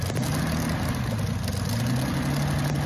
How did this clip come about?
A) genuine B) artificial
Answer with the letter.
A